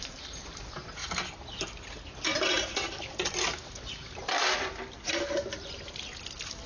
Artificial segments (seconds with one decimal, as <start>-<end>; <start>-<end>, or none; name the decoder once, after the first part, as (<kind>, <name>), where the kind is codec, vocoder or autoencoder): 0.0-1.0 (vocoder, BigVGAN v2); 2.2-2.7